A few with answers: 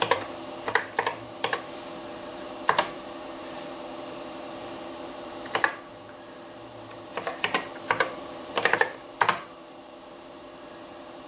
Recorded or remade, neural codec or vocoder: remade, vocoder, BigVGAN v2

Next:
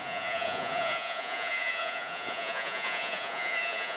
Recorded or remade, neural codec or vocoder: remade, vocoder, Vocos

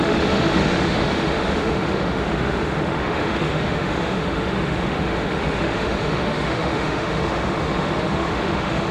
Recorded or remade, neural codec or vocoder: remade, autoencoder, DAC-VAE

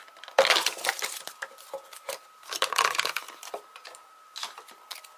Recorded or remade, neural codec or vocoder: recorded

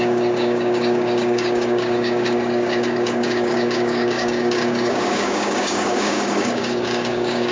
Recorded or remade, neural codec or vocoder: remade, codec, DAC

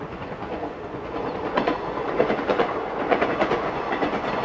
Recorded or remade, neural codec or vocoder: remade, vocoder, Vocos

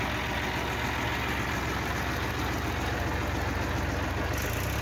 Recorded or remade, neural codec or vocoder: recorded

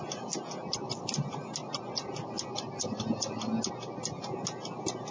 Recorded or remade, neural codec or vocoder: recorded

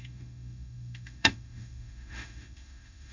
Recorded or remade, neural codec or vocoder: remade, autoencoder, DAC-VAE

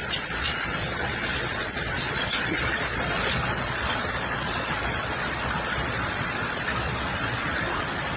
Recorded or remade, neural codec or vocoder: remade, vocoder, Vocos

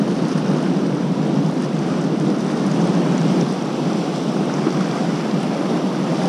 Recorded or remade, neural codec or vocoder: recorded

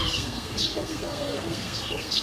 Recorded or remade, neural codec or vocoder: remade, codec, SNAC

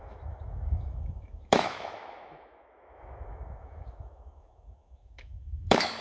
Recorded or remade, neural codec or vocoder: remade, autoencoder, DAC-VAE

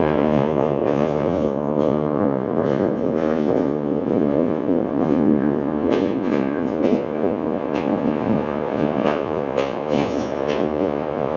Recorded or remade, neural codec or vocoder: remade, vocoder, Vocos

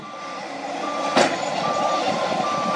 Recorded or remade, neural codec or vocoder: remade, vocoder, BigVGAN v2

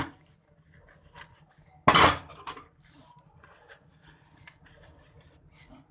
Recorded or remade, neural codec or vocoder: recorded